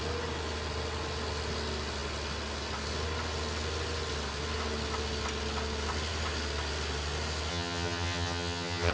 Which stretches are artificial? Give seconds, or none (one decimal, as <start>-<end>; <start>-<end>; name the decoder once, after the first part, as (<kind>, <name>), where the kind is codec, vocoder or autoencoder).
7.5-8.9 (vocoder, HiFi-GAN)